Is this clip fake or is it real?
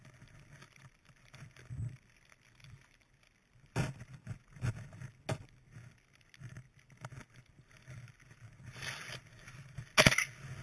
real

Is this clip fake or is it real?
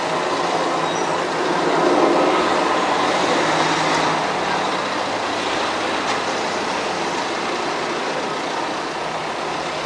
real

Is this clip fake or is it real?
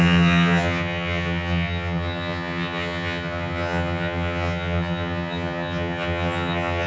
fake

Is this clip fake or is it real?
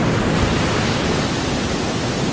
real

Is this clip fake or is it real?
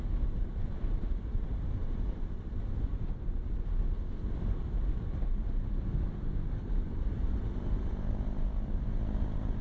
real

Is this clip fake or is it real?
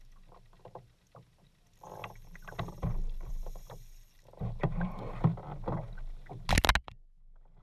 real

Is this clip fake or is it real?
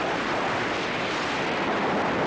real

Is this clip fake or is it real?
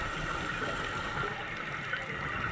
real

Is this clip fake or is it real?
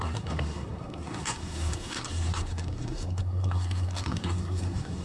fake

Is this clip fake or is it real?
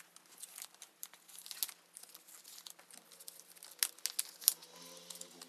real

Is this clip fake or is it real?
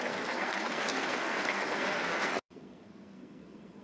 fake